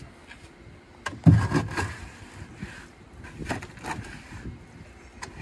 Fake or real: real